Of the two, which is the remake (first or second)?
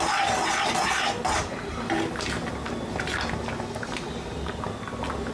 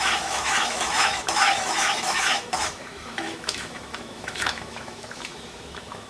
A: second